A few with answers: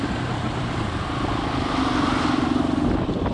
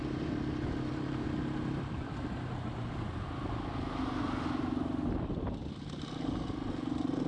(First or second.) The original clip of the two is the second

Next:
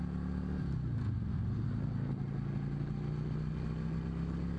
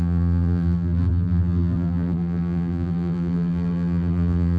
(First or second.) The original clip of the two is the first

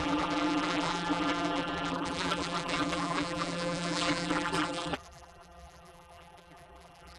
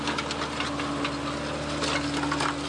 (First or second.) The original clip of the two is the second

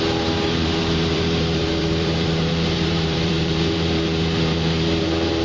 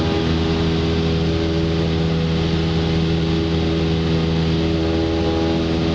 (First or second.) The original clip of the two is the second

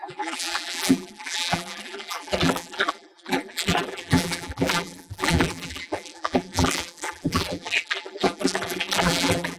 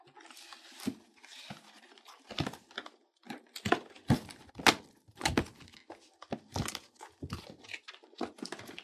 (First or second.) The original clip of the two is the second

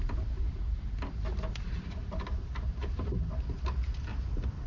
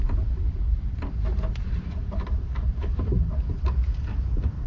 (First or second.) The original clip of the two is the first